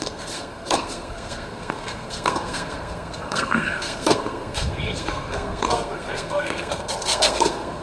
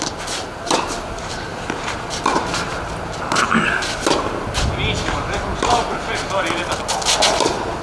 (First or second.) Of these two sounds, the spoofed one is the first